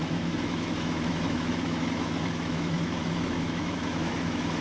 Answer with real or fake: fake